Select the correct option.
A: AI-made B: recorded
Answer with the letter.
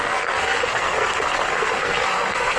A